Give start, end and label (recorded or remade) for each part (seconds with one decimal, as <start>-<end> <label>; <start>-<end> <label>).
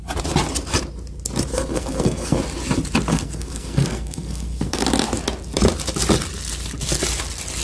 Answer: 0.0-1.5 recorded; 1.5-2.4 remade; 2.4-3.1 recorded; 3.1-4.8 remade; 4.8-7.6 recorded